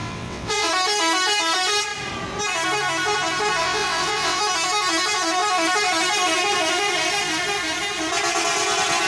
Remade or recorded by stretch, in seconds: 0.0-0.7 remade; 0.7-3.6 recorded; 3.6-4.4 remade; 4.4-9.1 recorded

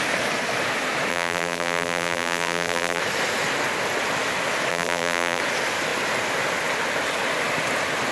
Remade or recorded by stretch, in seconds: 0.0-1.1 recorded; 1.1-3.0 remade; 3.0-4.7 recorded; 4.7-5.4 remade; 5.4-8.1 recorded

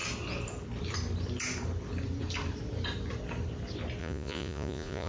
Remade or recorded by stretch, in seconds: 0.0-4.0 recorded; 4.0-5.1 remade

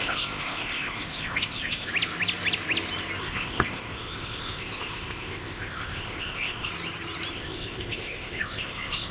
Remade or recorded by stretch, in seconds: 0.0-1.9 remade; 1.9-3.2 recorded; 3.2-6.7 remade; 6.7-7.3 recorded; 7.3-9.1 remade